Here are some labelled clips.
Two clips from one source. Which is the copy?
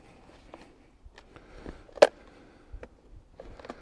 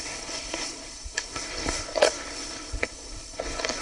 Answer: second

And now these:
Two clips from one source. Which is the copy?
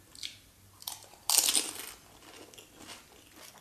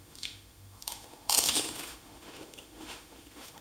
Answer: second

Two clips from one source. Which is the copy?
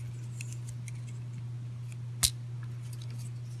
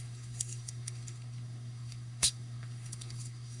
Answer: second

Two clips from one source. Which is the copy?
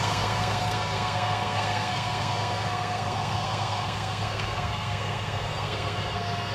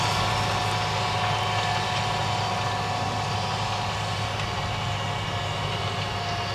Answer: first